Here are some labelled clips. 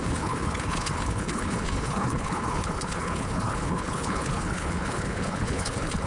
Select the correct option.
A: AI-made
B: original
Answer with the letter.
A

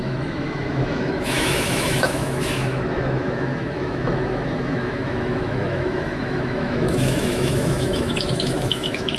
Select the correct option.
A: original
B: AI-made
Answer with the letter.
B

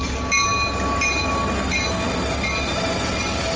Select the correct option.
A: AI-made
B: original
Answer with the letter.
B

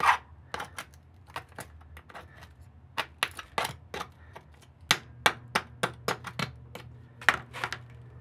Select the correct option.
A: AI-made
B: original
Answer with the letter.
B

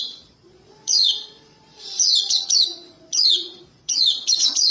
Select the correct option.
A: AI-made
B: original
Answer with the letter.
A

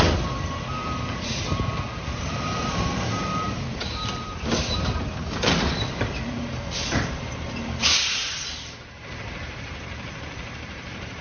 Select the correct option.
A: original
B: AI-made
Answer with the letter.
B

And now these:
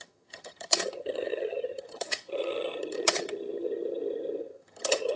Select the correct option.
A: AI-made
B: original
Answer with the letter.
A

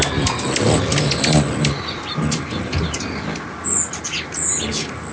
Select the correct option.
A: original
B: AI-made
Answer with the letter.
A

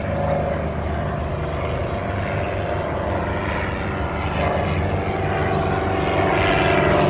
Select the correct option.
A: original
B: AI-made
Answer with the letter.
A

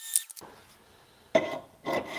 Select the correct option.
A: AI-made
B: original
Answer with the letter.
B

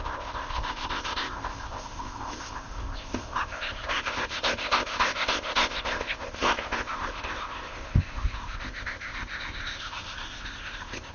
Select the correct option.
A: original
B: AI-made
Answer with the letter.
B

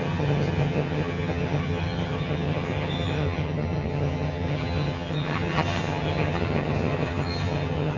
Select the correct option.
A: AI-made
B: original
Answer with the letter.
A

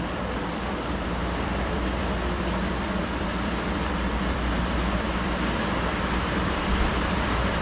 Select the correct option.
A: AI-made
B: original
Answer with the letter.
A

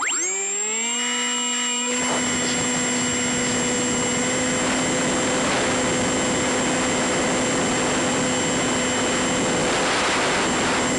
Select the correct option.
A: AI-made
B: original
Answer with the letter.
B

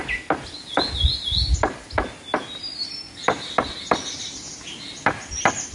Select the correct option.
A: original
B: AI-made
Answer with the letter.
A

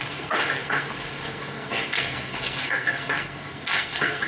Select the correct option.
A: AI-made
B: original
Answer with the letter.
A